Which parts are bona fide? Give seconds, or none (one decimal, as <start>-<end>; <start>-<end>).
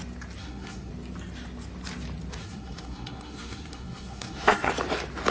0.0-0.4; 0.9-2.4; 4.7-5.3